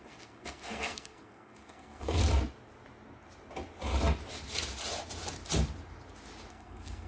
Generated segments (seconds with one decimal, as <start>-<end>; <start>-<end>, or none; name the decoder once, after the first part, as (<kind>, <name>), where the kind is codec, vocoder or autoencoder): 0.0-2.2 (codec, SNAC); 6.5-7.1

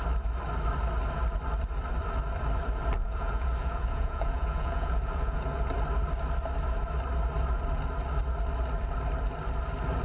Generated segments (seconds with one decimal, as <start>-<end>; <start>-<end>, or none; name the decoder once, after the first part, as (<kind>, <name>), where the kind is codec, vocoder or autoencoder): 3.0-5.7 (vocoder, Vocos)

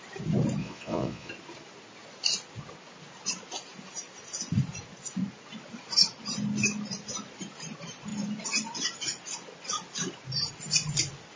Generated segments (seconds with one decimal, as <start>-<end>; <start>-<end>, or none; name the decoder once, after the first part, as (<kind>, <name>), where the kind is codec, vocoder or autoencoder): 0.6-1.3 (vocoder, Vocos)

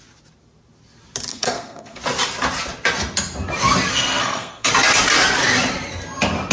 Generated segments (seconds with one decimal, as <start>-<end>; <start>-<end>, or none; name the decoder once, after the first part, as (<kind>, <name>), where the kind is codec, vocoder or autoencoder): 1.3-2.0 (codec, SNAC); 3.9-4.7

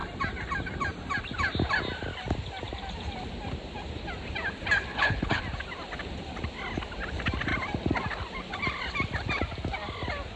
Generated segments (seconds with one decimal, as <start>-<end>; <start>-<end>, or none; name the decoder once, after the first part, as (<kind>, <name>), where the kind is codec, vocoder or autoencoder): 4.9-5.4 (codec, HILCodec)

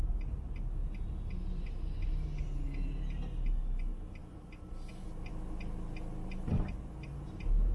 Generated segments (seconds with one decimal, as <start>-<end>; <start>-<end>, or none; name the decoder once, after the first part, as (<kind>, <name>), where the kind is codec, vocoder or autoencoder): none

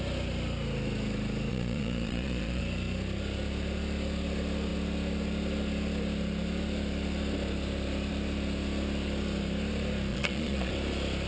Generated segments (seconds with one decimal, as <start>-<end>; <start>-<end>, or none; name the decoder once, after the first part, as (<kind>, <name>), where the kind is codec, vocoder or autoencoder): 1.5-2.6 (vocoder, Vocos); 10.1-10.7

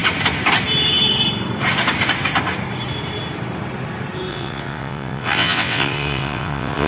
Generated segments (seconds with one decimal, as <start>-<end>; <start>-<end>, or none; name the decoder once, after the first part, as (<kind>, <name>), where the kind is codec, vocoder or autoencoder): 4.3-6.9 (vocoder, WaveNeXt)